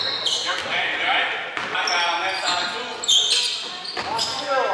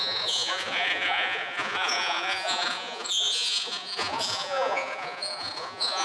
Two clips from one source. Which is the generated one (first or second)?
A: second